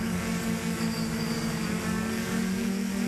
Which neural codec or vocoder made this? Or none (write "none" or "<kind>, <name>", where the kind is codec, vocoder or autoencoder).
codec, DAC